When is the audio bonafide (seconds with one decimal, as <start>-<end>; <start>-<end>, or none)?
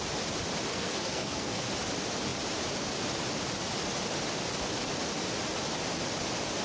0.0-0.7; 1.7-6.6